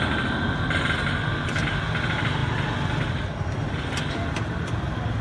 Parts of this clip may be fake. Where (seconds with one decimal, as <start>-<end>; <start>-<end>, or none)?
none